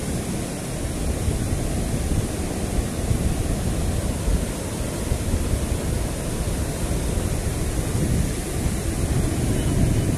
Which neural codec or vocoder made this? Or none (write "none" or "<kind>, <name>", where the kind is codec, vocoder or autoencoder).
none